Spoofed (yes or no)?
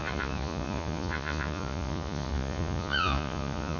yes